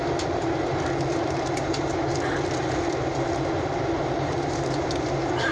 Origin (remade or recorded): recorded